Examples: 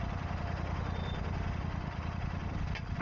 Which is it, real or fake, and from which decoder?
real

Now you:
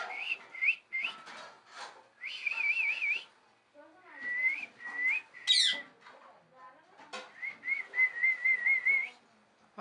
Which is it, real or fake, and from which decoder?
real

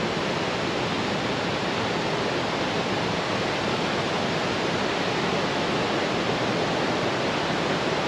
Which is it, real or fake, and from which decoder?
real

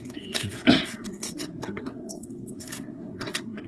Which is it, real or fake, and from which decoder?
fake, codec, SNAC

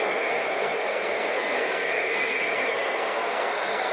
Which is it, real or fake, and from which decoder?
fake, codec, SNAC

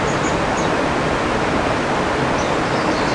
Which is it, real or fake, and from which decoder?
real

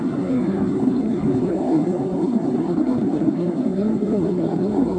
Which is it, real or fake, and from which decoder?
fake, codec, SNAC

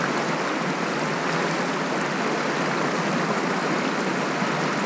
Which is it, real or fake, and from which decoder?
real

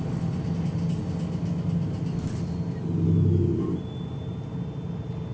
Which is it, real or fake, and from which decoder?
real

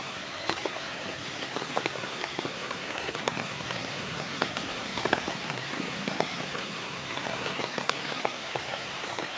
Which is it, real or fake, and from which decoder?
fake, codec, SNAC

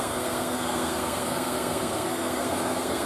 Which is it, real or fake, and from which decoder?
fake, codec, SNAC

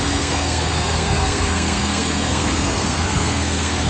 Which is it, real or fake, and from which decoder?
fake, codec, SNAC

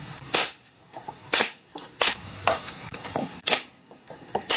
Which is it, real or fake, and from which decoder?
fake, codec, SNAC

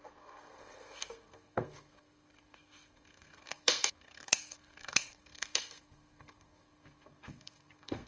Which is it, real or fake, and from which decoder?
fake, codec, SNAC